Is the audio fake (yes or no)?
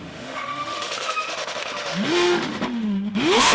yes